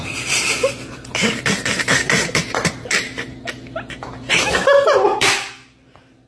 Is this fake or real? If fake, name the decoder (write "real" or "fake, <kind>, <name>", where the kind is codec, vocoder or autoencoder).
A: fake, vocoder, BigVGAN v2